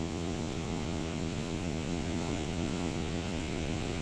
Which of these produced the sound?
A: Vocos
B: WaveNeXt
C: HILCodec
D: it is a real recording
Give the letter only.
A